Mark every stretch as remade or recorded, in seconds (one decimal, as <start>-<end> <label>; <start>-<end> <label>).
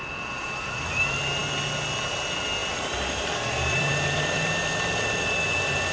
0.0-0.9 remade; 0.9-2.6 recorded; 2.6-4.5 remade; 4.5-5.9 recorded